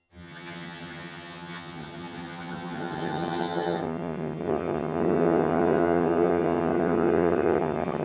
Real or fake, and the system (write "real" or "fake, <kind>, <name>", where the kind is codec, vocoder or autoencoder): fake, vocoder, HiFi-GAN